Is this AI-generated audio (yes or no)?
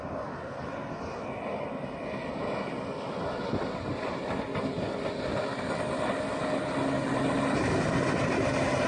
no